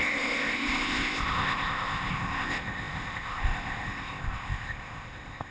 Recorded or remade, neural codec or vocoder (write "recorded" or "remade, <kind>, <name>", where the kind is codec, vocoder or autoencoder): remade, codec, ZipCodec